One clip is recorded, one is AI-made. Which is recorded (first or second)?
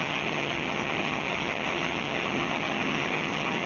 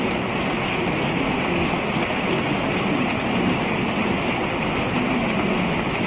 second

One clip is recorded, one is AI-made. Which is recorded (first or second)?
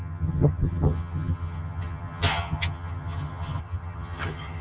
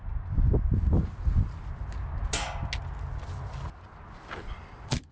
second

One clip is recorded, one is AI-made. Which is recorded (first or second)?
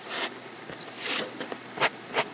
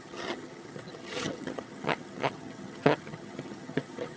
first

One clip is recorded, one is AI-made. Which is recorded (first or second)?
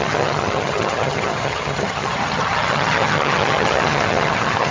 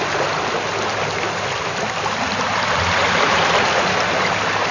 second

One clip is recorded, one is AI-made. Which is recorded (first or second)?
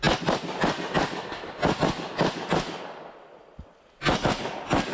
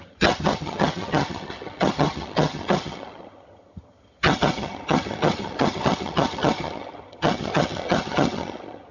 first